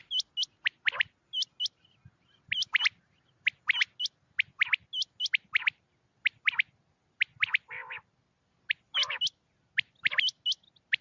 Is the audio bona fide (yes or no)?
yes